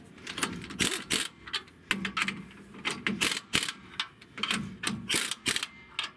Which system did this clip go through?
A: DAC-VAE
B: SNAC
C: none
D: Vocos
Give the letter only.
C